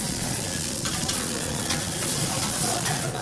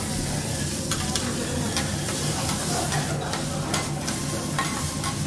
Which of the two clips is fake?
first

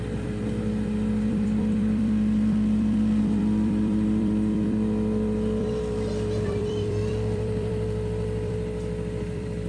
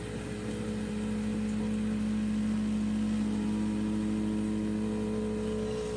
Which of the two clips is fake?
first